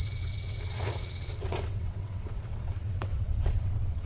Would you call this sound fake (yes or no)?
yes